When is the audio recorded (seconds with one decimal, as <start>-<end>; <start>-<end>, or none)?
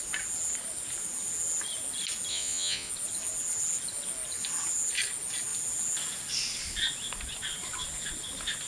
0.0-2.3; 2.9-8.7